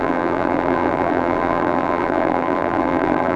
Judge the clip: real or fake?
fake